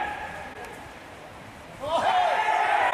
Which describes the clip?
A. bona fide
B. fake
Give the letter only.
A